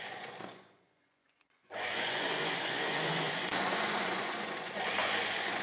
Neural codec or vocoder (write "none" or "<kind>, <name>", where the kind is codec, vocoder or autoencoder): vocoder, Vocos